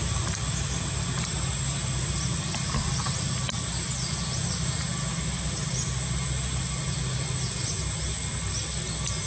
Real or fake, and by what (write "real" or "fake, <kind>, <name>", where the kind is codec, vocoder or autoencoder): real